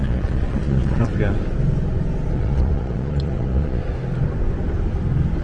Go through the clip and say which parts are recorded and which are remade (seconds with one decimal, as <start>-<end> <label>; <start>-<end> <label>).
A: 0.0-1.1 remade; 1.1-2.3 recorded; 2.3-3.8 remade; 3.8-5.4 recorded